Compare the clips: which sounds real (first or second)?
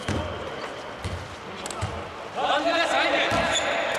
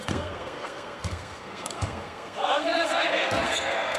first